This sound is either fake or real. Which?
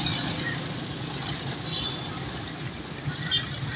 real